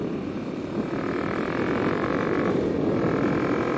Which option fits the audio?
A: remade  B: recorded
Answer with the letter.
B